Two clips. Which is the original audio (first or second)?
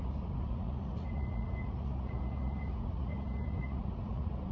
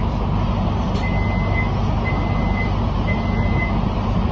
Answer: second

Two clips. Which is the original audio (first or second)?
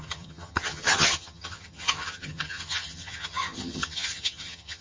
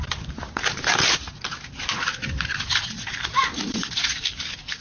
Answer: second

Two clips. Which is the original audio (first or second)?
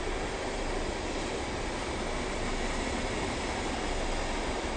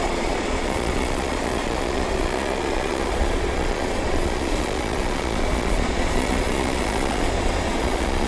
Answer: first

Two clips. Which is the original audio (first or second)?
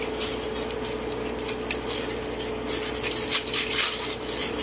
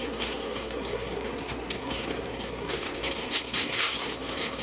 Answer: first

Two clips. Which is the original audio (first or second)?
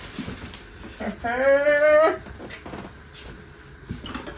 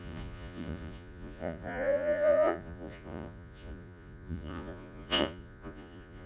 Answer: first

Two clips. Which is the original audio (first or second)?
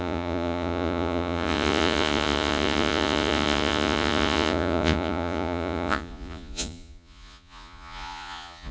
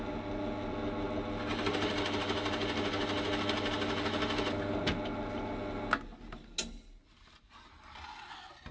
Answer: second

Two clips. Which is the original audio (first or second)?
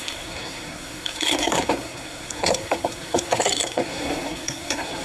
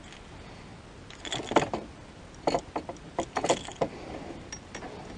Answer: second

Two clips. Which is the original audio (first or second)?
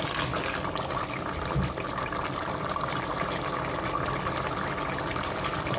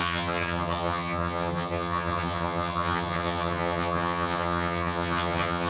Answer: first